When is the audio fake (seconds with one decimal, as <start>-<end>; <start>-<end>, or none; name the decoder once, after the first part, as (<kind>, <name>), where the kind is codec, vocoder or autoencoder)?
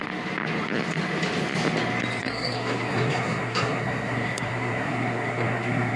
2.2-6.0 (codec, SNAC)